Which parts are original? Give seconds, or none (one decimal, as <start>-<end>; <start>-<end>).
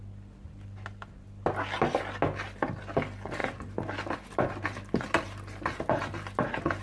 0.0-6.8